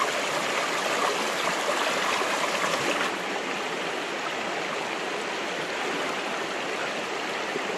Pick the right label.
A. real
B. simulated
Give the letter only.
A